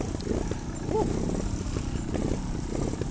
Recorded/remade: recorded